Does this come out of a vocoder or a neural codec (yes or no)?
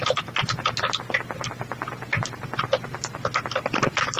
yes